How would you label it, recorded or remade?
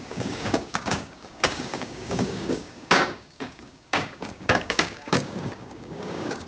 remade